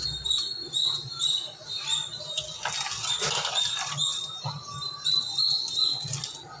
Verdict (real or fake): real